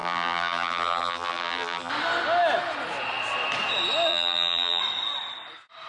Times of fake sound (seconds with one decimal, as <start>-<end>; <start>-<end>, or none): 0.0-1.9; 4.1-4.8